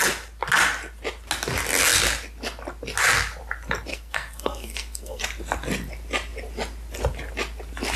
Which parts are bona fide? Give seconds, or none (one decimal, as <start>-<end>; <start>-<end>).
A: 0.0-3.9; 5.2-8.0